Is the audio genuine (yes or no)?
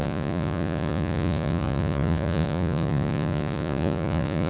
no